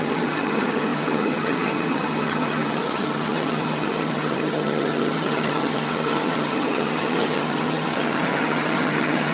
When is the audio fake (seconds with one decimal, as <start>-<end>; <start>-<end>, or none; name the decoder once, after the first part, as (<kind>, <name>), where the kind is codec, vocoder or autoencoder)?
0.0-9.3 (vocoder, HiFi-GAN)